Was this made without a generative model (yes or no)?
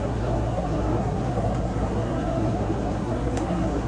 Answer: no